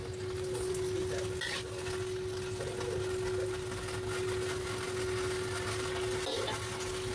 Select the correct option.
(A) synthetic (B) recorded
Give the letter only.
B